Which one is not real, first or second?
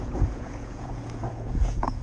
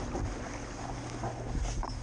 first